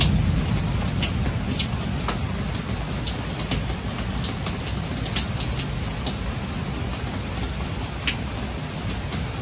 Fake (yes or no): no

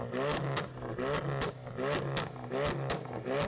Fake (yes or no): no